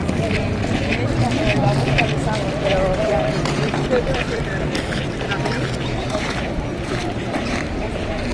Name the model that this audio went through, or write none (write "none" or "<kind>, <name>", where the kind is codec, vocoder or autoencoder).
vocoder, BigVGAN v2